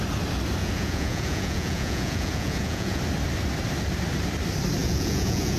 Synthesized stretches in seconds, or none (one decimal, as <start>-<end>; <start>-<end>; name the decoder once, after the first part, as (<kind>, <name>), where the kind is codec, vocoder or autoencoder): 0.6-3.0 (vocoder, Vocos); 4.8-5.6